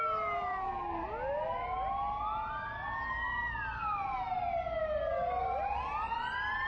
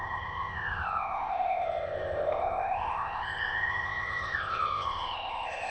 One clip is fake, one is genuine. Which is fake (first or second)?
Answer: second